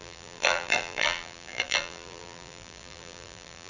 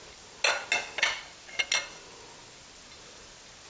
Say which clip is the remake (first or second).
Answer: first